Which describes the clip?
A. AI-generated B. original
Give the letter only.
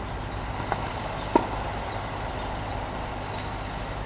B